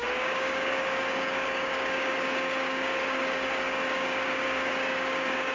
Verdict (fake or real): fake